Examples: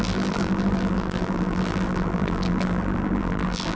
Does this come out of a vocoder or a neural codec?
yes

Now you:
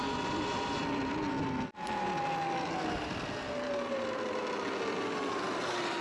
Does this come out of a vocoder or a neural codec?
no